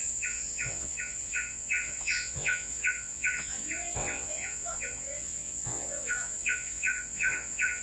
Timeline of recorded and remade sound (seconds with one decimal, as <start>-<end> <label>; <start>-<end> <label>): 0.0-7.8 remade

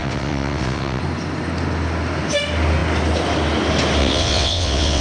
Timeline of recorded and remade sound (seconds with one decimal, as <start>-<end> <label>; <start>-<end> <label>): 0.0-1.0 remade; 1.0-4.0 recorded; 4.0-5.0 remade

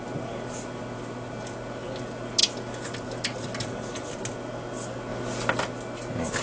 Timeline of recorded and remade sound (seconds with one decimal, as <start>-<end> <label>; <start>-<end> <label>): 0.0-6.4 recorded